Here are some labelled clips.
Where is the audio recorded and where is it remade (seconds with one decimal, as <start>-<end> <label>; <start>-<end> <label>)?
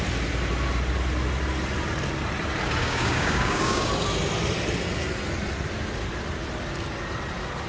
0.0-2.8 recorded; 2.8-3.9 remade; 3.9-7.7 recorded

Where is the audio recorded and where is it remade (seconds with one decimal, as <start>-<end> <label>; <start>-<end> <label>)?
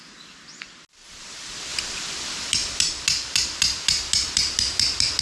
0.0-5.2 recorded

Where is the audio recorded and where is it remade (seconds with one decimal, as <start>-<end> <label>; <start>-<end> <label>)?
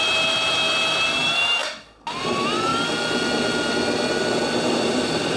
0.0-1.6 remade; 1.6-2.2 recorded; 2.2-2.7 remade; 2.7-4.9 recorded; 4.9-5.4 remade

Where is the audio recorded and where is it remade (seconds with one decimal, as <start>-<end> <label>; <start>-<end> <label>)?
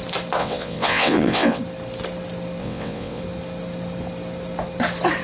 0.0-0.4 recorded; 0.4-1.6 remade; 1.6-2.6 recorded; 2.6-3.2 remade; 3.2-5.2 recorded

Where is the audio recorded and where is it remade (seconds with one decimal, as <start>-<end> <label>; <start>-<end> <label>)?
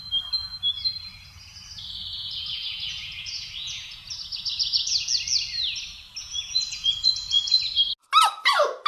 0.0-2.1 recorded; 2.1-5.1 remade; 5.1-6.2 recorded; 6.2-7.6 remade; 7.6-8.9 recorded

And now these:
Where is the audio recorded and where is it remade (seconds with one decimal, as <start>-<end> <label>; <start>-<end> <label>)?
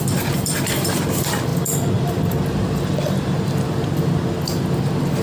0.0-5.2 remade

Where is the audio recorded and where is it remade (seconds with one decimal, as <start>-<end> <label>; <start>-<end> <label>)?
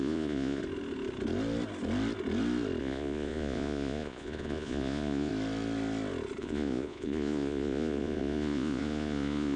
0.0-0.6 remade; 0.6-2.8 recorded; 2.8-5.3 remade; 5.3-6.4 recorded; 6.4-9.6 remade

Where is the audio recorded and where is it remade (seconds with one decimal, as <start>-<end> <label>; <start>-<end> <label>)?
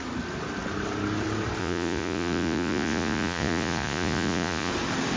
0.0-1.6 recorded; 1.6-4.7 remade; 4.7-5.2 recorded